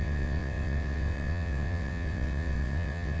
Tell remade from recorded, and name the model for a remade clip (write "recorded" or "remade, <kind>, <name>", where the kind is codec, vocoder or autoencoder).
remade, vocoder, WaveNeXt